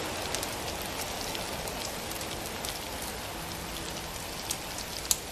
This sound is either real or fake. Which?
real